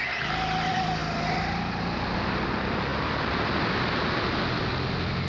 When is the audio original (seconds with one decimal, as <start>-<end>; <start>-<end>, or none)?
0.0-5.3